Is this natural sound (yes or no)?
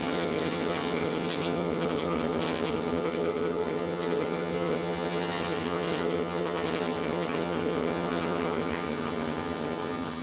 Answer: no